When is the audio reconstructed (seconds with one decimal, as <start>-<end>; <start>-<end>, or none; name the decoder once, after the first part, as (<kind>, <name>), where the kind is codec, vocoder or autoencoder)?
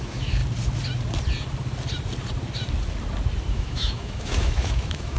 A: 0.0-0.4 (autoencoder, DAC-VAE); 3.5-5.2